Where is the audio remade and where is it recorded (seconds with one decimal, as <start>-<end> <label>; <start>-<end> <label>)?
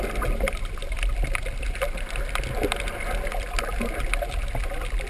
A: 0.0-5.1 recorded